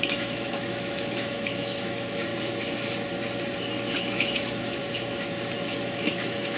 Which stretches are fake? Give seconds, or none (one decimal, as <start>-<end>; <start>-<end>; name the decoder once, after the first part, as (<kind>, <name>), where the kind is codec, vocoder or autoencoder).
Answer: 0.0-2.3 (autoencoder, DAC-VAE); 4.0-4.8; 5.7-6.6